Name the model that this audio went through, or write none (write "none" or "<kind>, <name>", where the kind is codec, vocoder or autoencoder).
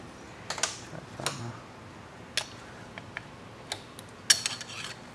none